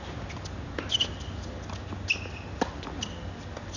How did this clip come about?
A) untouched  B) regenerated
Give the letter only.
A